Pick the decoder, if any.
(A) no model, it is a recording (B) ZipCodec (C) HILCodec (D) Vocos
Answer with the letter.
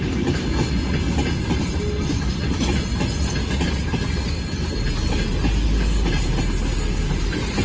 A